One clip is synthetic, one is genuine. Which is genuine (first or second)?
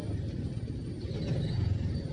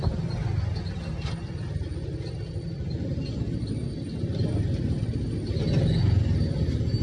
second